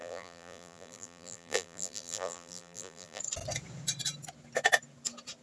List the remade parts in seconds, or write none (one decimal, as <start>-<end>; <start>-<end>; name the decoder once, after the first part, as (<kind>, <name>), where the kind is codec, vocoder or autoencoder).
0.0-3.2 (vocoder, BigVGAN v2)